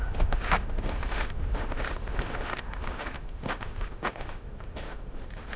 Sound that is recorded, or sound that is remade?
remade